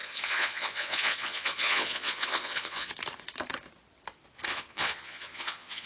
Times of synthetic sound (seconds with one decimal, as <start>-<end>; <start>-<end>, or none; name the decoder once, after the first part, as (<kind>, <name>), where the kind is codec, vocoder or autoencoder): 0.0-2.9 (vocoder, Vocos); 4.5-5.9